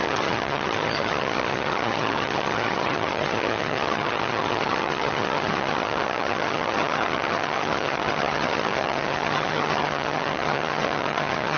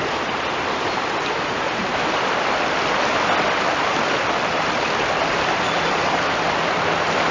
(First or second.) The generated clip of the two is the first